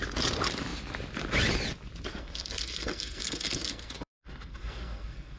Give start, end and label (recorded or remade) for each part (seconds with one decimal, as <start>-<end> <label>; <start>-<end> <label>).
0.0-2.1 recorded; 2.1-5.4 remade